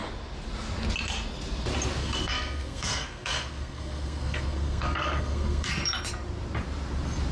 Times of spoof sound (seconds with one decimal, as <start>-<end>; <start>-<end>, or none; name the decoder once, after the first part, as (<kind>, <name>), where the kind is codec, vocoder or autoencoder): 2.0-5.7 (codec, SNAC)